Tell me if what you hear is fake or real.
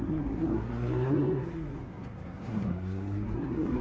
fake